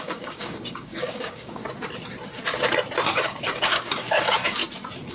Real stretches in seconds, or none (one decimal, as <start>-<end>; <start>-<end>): 1.6-3.1; 4.6-5.1